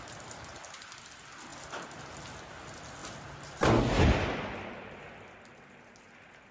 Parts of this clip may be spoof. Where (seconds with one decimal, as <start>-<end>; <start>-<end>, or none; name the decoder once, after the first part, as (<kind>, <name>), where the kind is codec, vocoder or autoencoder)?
none